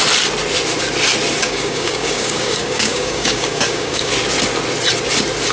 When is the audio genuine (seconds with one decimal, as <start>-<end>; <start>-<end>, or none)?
0.0-1.4; 4.1-5.5